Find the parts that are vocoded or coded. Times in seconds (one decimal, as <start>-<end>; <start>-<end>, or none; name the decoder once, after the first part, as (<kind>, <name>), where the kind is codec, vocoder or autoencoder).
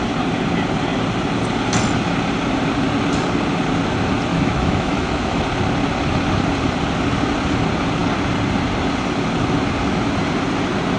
4.3-5.4 (autoencoder, DAC-VAE)